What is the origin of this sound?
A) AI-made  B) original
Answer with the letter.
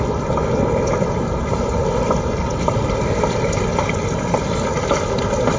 B